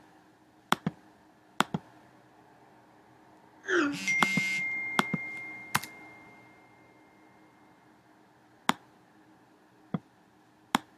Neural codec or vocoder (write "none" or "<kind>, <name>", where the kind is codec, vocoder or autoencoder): none